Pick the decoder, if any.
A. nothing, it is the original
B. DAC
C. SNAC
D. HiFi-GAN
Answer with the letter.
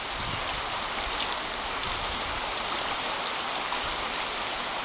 A